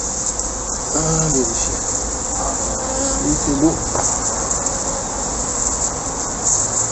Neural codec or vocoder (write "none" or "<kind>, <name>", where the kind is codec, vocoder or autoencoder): none